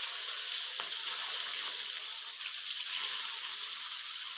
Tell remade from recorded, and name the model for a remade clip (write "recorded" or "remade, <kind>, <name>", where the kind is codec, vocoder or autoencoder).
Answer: recorded